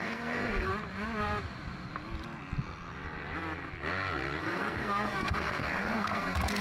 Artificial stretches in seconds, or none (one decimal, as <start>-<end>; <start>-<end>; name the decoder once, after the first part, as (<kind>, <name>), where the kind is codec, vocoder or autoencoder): 0.0-0.7 (codec, SNAC); 4.4-6.6